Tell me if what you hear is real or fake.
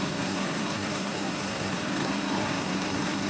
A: fake